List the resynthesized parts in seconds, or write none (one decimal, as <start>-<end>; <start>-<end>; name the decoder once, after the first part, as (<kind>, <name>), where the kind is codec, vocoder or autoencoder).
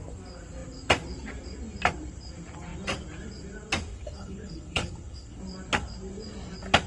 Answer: 3.9-5.4 (codec, HILCodec)